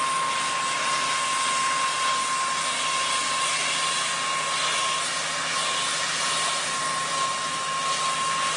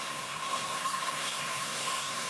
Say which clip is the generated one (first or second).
second